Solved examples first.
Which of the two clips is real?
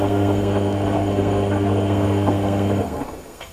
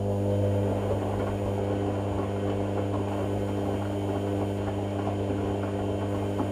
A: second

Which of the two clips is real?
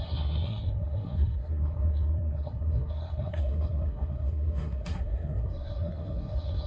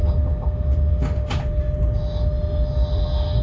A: second